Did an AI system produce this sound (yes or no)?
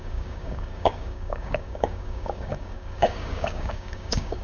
yes